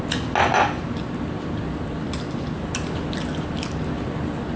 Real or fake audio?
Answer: real